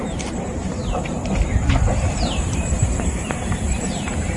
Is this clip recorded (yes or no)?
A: no